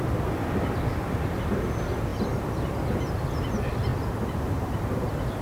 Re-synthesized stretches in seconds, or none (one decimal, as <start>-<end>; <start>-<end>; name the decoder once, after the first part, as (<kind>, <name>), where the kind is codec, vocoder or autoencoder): 2.1-2.7 (vocoder, BigVGAN v2); 3.9-4.4

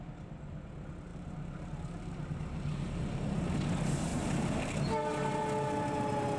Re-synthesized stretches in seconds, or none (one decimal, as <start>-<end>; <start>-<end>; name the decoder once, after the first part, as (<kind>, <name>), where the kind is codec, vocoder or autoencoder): 1.1-3.5 (vocoder, BigVGAN v2); 4.1-4.8

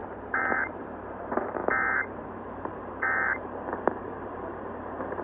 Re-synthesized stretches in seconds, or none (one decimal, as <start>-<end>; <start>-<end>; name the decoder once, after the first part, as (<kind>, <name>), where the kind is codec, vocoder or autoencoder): 0.0-1.6 (vocoder, BigVGAN v2); 2.6-5.2

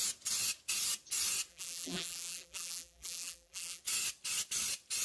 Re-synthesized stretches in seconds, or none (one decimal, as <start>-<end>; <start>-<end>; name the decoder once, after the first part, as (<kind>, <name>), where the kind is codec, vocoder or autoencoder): 1.5-3.8 (vocoder, BigVGAN v2)

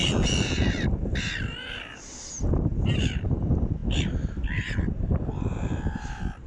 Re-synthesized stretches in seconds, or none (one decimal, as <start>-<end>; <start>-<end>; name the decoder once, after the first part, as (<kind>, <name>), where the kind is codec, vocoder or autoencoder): 0.0-6.5 (vocoder, BigVGAN v2)

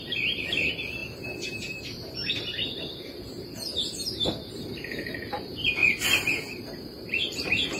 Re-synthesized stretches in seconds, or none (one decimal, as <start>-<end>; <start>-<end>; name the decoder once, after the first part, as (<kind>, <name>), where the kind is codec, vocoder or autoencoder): 0.0-7.8 (vocoder, BigVGAN v2)